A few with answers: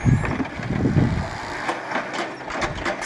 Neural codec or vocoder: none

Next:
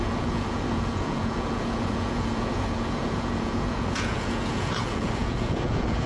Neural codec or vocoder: vocoder, Vocos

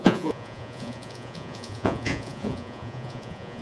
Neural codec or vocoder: vocoder, Vocos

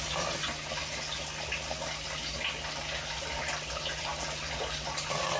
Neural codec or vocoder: none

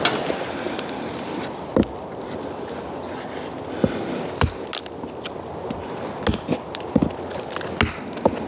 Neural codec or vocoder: none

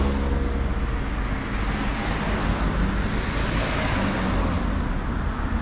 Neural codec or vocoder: none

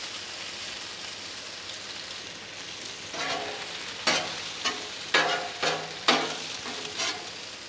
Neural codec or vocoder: none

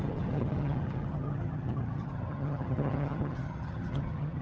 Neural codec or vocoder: vocoder, HiFi-GAN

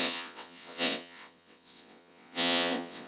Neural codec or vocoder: vocoder, WaveNeXt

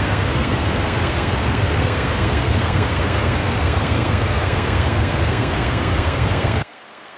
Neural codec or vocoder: codec, SNAC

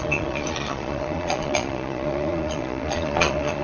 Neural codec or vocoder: vocoder, Vocos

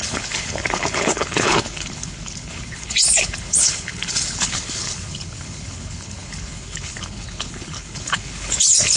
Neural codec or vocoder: codec, HILCodec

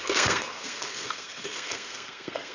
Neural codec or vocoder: codec, SNAC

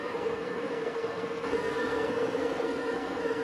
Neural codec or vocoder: codec, SNAC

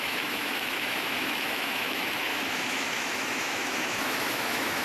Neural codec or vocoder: autoencoder, DAC-VAE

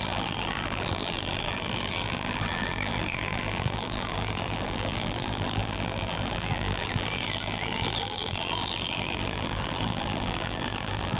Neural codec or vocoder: vocoder, BigVGAN v2